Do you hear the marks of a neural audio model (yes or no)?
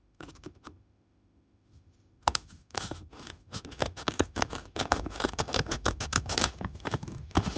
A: yes